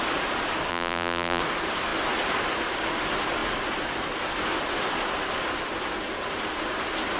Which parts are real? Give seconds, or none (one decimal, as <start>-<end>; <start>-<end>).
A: 0.0-0.7; 1.4-7.2